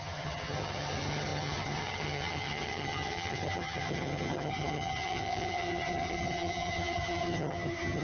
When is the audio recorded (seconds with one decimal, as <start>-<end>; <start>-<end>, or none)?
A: none